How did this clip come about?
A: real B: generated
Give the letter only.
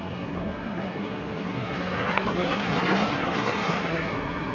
B